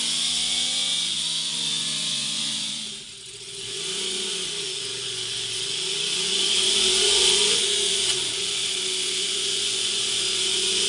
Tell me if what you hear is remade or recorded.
remade